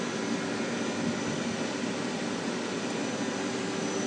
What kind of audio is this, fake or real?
real